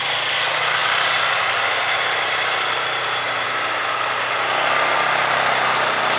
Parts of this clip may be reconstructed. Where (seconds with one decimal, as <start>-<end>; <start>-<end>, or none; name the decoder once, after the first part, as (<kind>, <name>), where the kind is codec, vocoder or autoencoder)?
none